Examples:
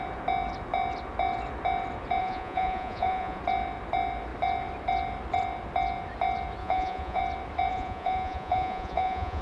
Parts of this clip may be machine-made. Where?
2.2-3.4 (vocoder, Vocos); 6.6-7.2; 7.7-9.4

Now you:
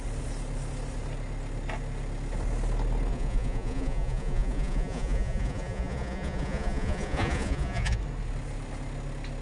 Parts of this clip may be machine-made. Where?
3.1-8.0 (vocoder, Vocos)

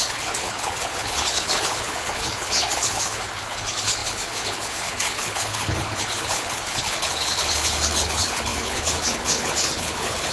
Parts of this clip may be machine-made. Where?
0.0-10.3 (codec, HILCodec)